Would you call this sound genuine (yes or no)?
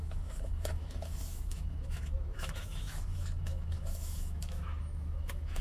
no